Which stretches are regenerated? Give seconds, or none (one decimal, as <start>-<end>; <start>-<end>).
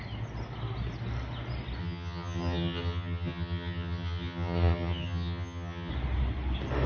1.8-5.9